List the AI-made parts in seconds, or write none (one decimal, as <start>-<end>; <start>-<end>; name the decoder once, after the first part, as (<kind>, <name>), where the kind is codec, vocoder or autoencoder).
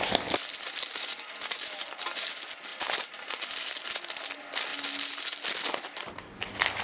2.7-3.8 (vocoder, BigVGAN v2)